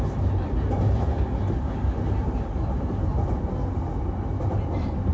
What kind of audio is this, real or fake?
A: real